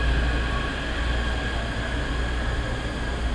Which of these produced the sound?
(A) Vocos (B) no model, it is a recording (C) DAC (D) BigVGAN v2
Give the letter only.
B